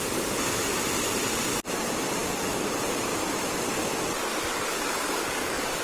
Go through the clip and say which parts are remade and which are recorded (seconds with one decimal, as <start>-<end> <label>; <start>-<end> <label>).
0.0-2.2 recorded; 2.2-2.7 remade; 2.7-4.7 recorded; 4.7-5.8 remade